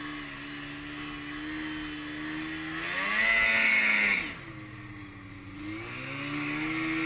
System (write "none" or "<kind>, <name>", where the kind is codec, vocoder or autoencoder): none